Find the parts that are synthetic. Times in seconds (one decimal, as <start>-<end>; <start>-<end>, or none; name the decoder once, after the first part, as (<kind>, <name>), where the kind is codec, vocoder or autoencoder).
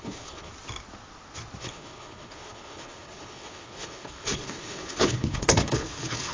0.0-0.5 (codec, HILCodec); 1.6-6.3